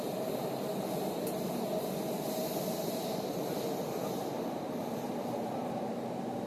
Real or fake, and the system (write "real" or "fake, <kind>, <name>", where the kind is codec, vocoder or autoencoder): fake, vocoder, BigVGAN v2